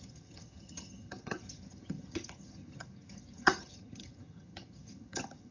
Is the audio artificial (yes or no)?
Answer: yes